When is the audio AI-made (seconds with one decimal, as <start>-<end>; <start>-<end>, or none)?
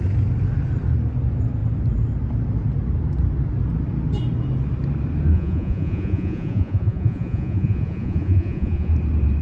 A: 5.3-8.9